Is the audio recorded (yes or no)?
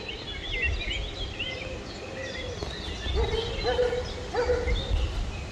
yes